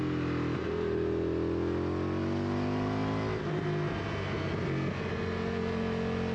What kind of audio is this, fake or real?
real